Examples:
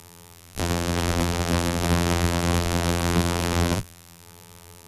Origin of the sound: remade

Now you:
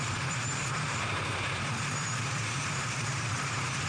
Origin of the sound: remade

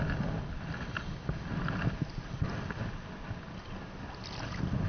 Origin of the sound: recorded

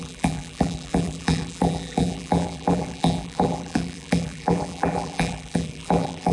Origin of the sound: remade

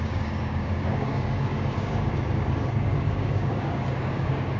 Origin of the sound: remade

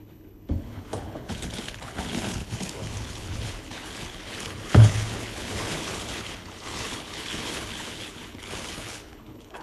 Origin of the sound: remade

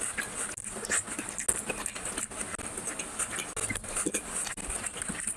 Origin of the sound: recorded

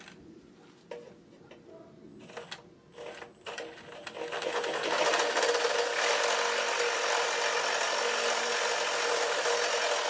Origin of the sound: recorded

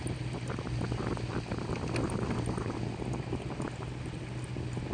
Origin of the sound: recorded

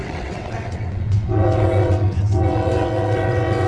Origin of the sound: remade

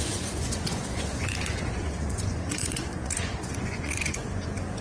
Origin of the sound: remade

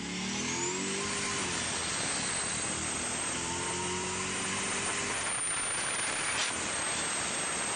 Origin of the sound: recorded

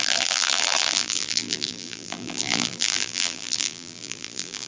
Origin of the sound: remade